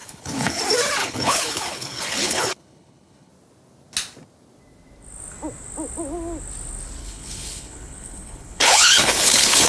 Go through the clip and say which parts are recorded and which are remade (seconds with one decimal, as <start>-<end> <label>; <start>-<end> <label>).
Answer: 0.0-0.6 remade; 0.6-1.0 recorded; 1.0-3.3 remade; 3.3-7.0 recorded; 7.0-9.7 remade